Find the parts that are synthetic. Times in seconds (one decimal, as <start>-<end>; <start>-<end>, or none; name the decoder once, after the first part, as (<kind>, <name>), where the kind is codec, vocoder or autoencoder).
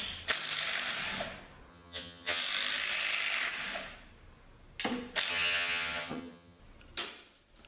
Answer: 1.7-2.4 (vocoder, HiFi-GAN); 5.3-6.6